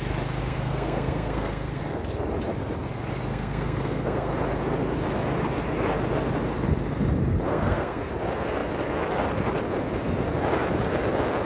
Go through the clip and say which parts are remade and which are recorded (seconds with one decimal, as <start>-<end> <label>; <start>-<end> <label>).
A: 0.0-0.4 recorded; 0.4-1.8 remade; 1.8-3.3 recorded; 3.3-4.3 remade; 4.3-7.5 recorded; 7.5-8.1 remade; 8.1-11.5 recorded